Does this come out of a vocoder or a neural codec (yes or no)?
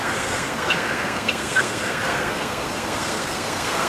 yes